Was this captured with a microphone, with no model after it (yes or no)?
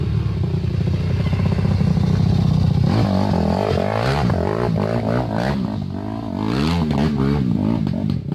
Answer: yes